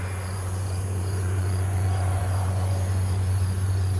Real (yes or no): no